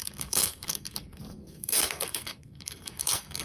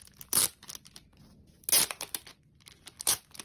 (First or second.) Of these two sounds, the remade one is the first